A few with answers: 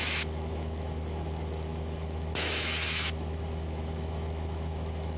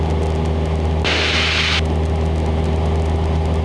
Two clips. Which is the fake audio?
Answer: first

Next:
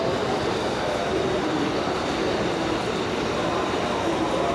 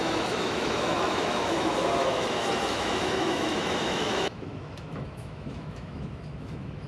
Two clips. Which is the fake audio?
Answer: second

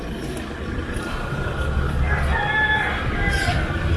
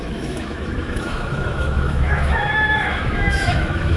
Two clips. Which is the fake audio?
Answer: second